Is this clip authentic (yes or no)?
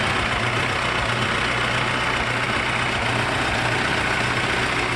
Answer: yes